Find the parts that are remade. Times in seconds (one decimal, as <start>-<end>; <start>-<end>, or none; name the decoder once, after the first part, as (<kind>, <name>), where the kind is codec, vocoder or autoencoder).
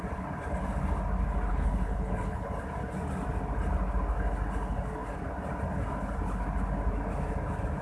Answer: 1.5-2.5 (codec, HILCodec)